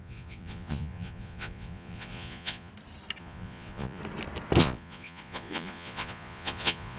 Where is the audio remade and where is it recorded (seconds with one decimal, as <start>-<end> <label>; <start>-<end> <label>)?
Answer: 0.0-2.7 remade; 2.7-3.2 recorded; 3.2-4.0 remade; 4.0-4.6 recorded; 4.6-7.0 remade

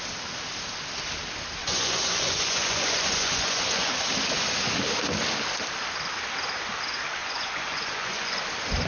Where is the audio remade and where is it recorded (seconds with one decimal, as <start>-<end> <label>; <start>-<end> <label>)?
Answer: 0.0-1.6 recorded; 1.6-3.9 remade; 3.9-7.2 recorded; 7.2-8.4 remade; 8.4-8.9 recorded

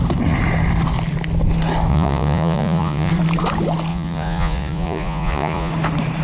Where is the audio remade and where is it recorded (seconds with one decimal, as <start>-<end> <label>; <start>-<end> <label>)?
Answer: 0.0-1.9 recorded; 1.9-3.1 remade; 3.1-3.9 recorded; 3.9-5.7 remade; 5.7-6.2 recorded

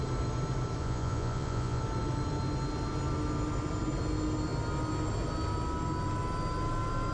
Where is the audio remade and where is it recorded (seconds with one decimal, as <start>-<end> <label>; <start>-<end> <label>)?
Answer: 0.0-0.8 recorded; 0.8-1.8 remade; 1.8-7.1 recorded

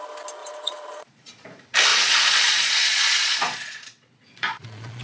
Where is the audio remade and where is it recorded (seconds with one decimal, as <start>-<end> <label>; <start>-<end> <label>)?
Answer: 0.0-0.4 recorded; 0.4-1.3 remade; 1.3-1.9 recorded; 1.9-5.0 remade

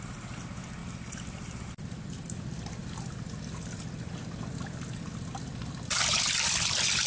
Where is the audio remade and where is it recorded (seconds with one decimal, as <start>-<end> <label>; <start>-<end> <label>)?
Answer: 0.0-7.1 recorded

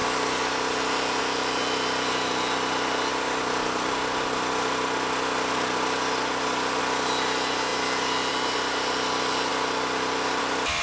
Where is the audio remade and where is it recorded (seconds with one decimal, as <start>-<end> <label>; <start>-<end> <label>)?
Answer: 0.0-10.8 recorded

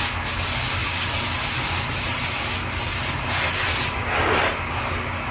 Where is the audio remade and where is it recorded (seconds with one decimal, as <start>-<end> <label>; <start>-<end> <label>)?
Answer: 0.0-5.3 recorded